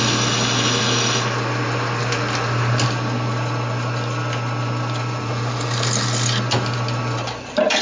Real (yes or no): yes